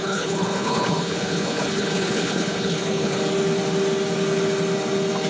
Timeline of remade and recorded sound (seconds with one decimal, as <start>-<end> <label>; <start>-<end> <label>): 0.0-3.2 remade; 3.2-5.3 recorded